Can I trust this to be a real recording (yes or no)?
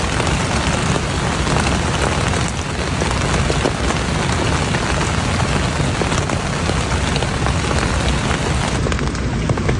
yes